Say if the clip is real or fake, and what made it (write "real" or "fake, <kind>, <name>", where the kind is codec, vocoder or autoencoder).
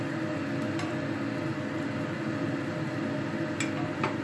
real